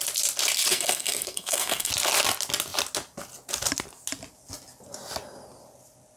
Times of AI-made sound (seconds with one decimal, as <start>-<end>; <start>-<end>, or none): 0.7-1.9